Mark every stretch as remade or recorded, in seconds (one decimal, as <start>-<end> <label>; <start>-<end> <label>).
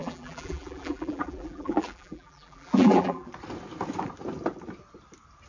0.0-3.3 remade; 3.3-5.5 recorded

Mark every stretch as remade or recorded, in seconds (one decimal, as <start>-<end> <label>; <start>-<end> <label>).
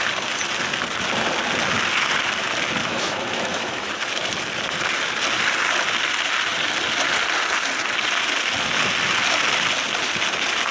0.0-2.8 recorded; 2.8-3.9 remade; 3.9-10.7 recorded